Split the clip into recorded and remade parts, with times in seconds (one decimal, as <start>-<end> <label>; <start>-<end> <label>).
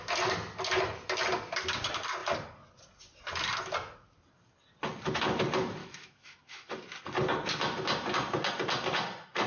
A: 0.0-5.8 recorded; 5.8-6.7 remade; 6.7-9.5 recorded